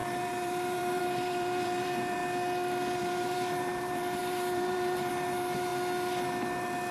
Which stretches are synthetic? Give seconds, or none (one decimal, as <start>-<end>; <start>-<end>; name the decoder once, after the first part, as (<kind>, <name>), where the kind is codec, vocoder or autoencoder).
0.0-2.2 (vocoder, BigVGAN v2); 3.0-5.7